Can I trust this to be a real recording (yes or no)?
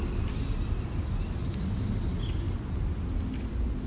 yes